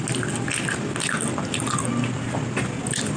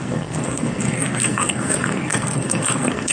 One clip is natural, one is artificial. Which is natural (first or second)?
first